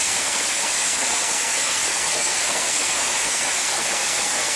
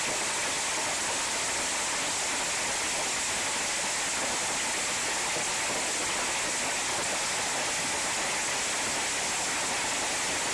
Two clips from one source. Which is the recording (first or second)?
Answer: second